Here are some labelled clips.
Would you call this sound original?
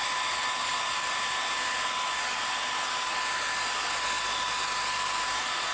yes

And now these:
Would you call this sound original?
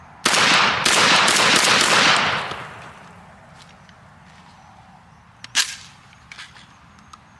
yes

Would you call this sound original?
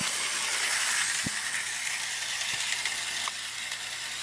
yes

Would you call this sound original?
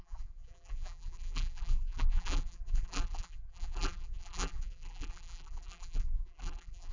no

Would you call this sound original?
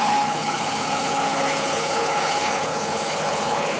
no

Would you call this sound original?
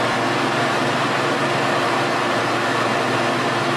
yes